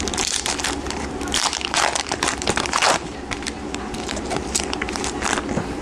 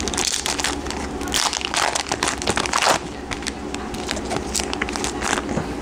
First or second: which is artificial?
first